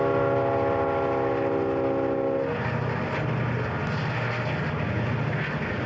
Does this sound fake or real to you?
real